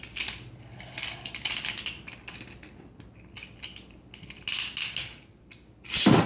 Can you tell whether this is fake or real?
real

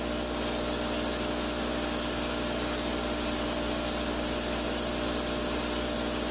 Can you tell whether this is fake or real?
real